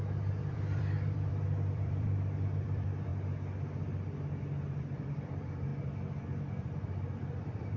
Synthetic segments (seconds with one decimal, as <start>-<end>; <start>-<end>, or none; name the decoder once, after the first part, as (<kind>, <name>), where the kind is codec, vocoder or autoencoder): 0.0-3.1 (vocoder, BigVGAN v2); 4.8-5.7; 6.5-7.8